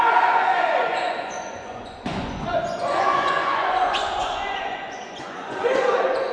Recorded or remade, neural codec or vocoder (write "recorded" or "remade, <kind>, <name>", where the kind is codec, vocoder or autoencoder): remade, vocoder, Vocos